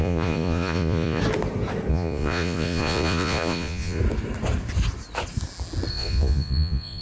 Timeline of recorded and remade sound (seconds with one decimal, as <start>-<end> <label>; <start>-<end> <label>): 0.0-1.2 remade; 1.2-1.9 recorded; 1.9-4.0 remade; 4.0-5.9 recorded; 5.9-7.0 remade